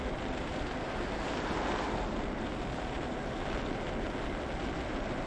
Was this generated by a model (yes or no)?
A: no